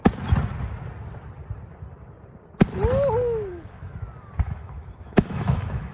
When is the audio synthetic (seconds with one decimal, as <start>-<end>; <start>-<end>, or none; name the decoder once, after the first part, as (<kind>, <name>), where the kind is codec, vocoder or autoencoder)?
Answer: 3.5-3.9 (autoencoder, DAC-VAE); 4.4-5.9